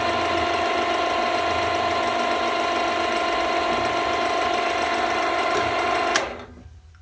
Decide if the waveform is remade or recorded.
recorded